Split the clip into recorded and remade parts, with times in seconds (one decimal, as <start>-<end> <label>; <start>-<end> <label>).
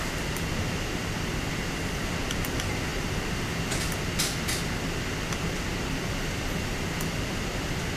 0.0-8.0 recorded